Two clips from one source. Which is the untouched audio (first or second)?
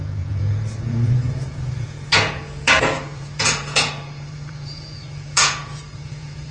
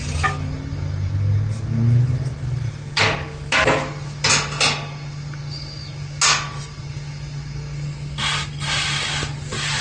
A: second